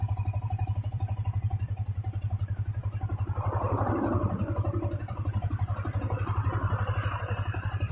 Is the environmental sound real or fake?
fake